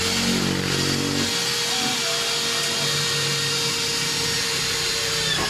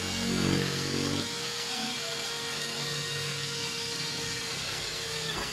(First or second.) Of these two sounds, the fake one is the second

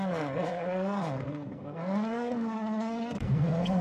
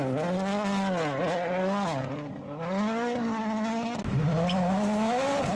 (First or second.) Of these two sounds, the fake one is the first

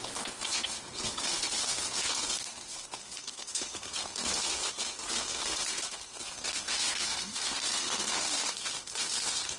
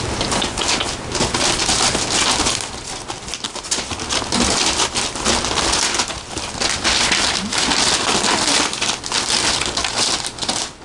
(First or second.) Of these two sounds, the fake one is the first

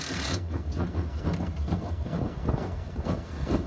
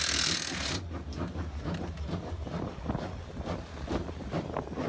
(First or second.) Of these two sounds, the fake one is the first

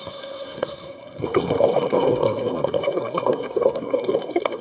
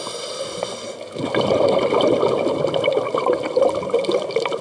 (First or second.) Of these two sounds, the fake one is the first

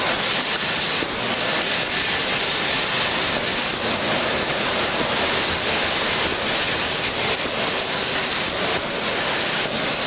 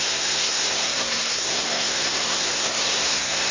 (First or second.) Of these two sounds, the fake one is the second